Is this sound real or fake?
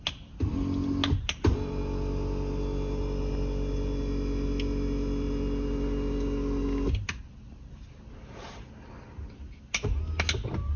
real